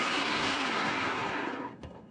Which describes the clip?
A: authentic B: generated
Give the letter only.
B